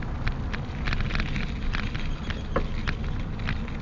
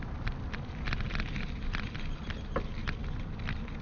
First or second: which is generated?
second